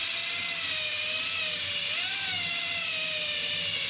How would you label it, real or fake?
real